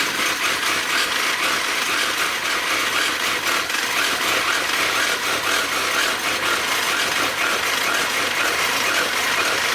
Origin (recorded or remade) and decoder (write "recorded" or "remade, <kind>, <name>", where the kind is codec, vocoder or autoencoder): recorded